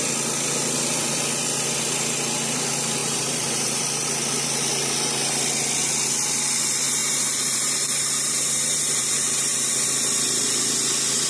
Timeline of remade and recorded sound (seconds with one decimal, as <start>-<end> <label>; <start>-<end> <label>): 0.0-3.0 recorded; 3.0-3.8 remade; 3.8-7.0 recorded; 7.0-9.7 remade; 9.7-11.3 recorded